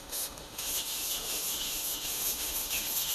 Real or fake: fake